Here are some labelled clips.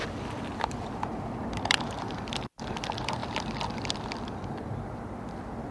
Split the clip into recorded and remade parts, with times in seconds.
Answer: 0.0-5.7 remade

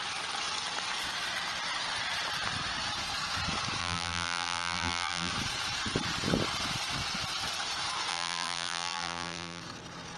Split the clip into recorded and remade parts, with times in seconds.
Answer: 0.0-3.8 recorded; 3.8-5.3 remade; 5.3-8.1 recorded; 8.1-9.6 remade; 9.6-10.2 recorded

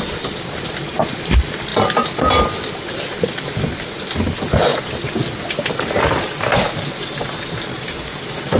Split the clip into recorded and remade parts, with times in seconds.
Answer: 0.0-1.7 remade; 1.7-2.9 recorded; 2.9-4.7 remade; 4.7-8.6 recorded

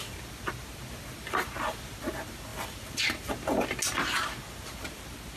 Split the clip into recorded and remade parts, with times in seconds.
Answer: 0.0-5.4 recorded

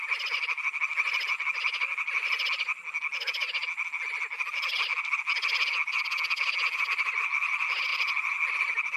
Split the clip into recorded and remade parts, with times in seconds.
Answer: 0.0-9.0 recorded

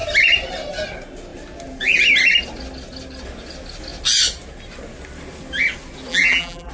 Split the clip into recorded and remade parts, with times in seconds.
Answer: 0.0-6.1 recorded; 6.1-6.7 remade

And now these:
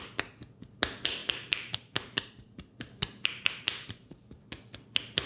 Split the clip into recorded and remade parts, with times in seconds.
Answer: 0.0-1.2 recorded; 1.2-4.4 remade; 4.4-5.3 recorded